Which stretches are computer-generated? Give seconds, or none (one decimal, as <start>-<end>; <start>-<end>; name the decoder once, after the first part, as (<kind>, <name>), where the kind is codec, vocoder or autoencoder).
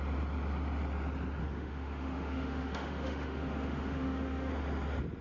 1.4-4.5 (autoencoder, DAC-VAE)